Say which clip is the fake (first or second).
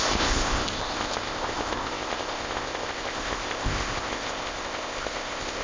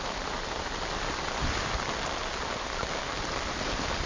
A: first